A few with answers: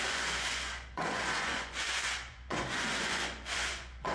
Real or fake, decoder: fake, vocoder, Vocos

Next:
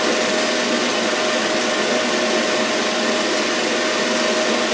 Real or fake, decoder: real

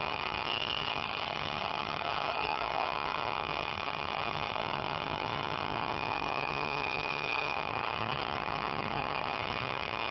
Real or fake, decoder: fake, vocoder, HiFi-GAN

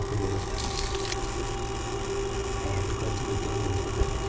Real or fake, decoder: real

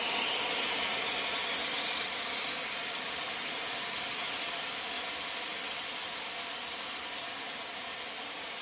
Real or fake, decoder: real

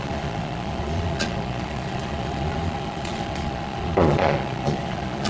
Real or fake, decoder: fake, vocoder, Vocos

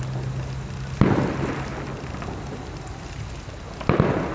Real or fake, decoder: real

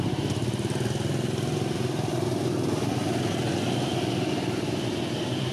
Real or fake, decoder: real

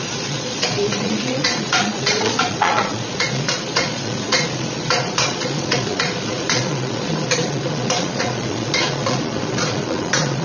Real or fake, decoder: fake, vocoder, Vocos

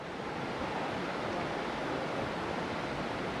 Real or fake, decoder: real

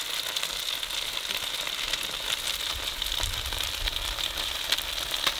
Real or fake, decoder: real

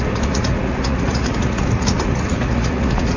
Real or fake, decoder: fake, vocoder, Vocos